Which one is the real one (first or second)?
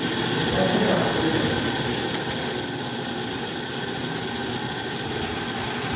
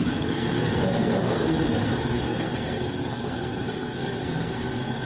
first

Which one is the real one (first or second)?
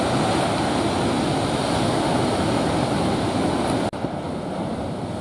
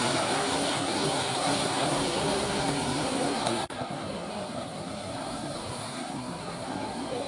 first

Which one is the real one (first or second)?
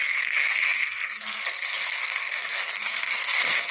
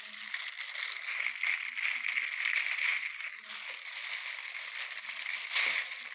second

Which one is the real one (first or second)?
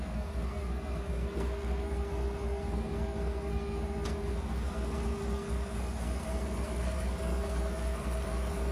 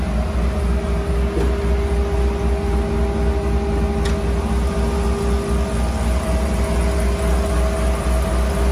second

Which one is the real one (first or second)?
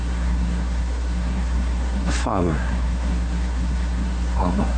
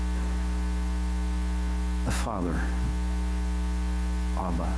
second